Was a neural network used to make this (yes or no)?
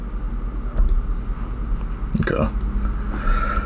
no